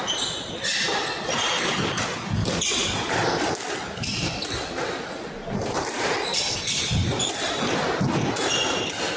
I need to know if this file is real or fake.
real